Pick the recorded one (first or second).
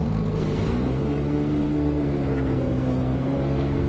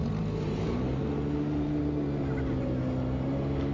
second